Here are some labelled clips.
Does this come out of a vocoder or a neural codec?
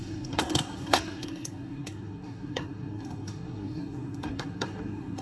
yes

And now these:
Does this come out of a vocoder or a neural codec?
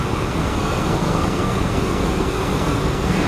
yes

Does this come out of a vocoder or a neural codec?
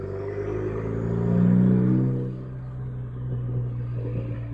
no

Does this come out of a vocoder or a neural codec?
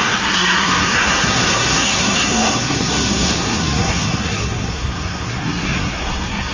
yes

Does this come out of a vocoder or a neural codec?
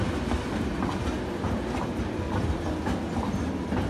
no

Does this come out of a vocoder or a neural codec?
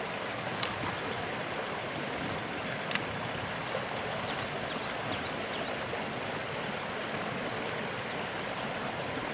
no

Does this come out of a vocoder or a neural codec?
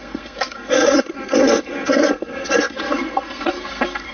yes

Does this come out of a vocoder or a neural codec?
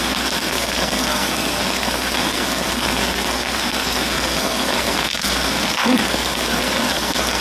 yes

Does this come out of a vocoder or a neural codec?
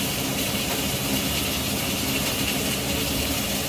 no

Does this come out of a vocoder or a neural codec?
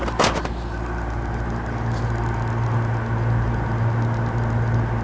no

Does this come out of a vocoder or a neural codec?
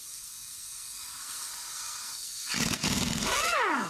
yes